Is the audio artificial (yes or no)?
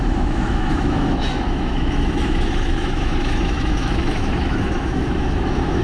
yes